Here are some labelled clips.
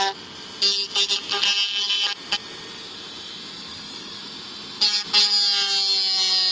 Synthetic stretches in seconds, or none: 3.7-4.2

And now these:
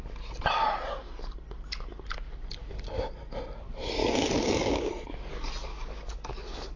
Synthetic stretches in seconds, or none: 2.6-3.2; 4.0-4.9; 5.7-6.8

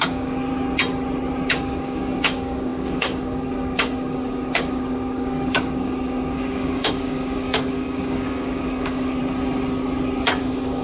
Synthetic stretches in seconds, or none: 0.0-0.5; 1.5-9.2; 10.4-10.8

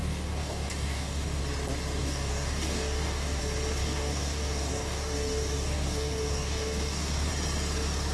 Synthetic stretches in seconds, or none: 0.0-1.4; 2.0-3.4; 3.8-7.3

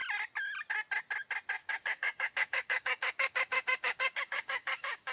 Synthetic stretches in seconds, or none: 1.6-5.1

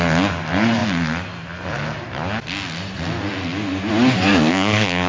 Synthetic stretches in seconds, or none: 4.3-5.1

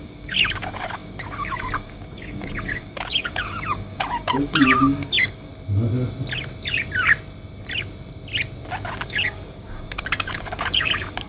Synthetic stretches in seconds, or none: 0.0-5.5; 8.9-11.3